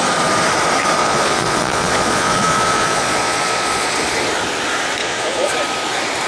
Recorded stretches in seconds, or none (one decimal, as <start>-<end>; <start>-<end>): 0.0-1.0; 3.9-5.0; 5.5-6.3